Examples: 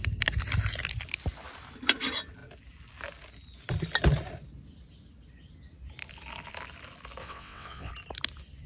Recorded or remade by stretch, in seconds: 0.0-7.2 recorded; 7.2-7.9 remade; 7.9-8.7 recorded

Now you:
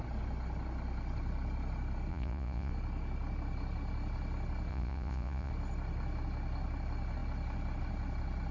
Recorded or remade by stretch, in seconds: 0.0-2.1 recorded; 2.1-2.7 remade; 2.7-4.7 recorded; 4.7-5.5 remade; 5.5-8.5 recorded

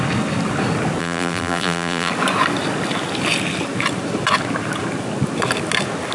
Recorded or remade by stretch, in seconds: 0.0-1.0 recorded; 1.0-2.1 remade; 2.1-6.1 recorded